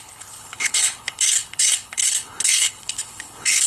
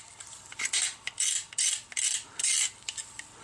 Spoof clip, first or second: first